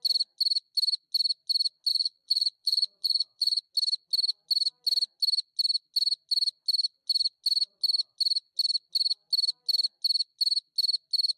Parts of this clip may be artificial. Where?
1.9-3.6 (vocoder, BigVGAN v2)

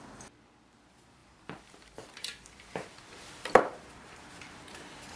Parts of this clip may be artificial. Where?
1.2-4.3 (vocoder, BigVGAN v2)

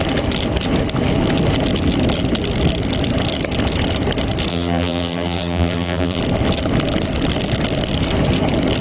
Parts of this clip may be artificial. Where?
4.5-6.2 (vocoder, BigVGAN v2)

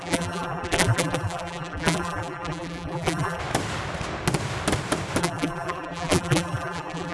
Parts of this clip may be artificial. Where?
0.0-3.4 (vocoder, BigVGAN v2); 5.2-7.1

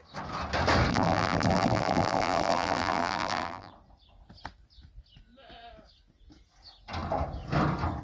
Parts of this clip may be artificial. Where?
0.9-3.7 (vocoder, BigVGAN v2)